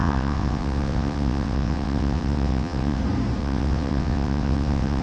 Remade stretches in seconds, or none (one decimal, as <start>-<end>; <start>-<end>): 0.0-3.0; 3.4-5.0